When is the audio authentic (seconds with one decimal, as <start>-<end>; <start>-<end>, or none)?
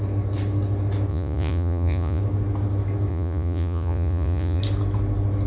0.0-1.1; 2.2-3.1; 4.6-5.5